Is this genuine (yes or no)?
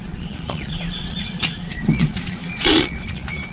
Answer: no